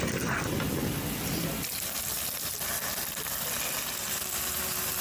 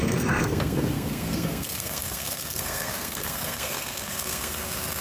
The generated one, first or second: second